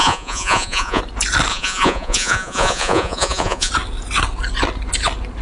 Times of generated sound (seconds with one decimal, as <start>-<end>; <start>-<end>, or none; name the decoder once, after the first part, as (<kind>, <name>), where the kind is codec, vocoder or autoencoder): 0.0-1.0 (vocoder, Vocos); 1.5-3.7

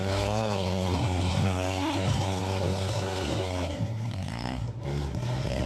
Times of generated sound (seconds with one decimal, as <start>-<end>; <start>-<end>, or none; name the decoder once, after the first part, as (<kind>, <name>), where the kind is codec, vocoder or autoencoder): 0.0-5.7 (codec, SNAC)

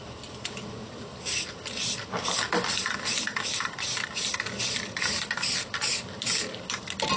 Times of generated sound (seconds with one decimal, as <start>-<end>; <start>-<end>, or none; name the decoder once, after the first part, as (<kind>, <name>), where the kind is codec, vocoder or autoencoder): none

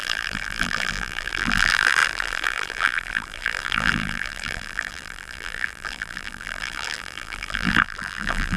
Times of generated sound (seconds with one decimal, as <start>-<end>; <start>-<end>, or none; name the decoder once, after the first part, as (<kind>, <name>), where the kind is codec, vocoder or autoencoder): 0.0-8.6 (vocoder, BigVGAN v2)